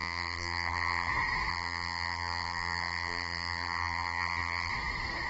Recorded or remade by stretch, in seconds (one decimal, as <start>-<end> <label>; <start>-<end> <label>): 0.0-1.1 remade; 1.1-1.5 recorded; 1.5-4.7 remade; 4.7-5.3 recorded